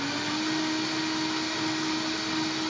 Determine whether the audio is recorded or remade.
recorded